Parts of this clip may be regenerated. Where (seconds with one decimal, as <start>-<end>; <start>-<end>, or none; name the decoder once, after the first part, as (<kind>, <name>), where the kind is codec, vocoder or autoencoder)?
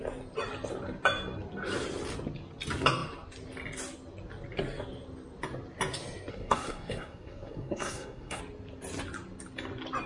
6.3-8.4 (codec, SNAC)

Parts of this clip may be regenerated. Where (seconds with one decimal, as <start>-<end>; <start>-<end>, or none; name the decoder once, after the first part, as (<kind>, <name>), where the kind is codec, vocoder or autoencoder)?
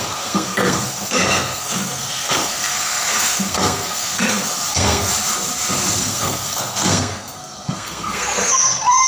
0.0-5.1 (codec, SNAC); 6.0-9.1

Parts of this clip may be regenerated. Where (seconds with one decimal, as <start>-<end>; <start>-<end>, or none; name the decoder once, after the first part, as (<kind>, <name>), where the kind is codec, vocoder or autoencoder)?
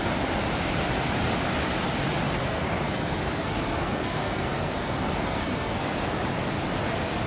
2.4-6.0 (codec, SNAC)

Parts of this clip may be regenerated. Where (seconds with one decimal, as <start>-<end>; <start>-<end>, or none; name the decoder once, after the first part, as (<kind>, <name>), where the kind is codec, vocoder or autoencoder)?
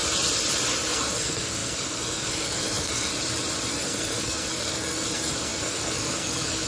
0.9-3.1 (codec, SNAC); 3.7-6.7